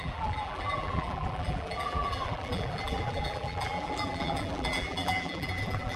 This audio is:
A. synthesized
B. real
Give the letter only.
A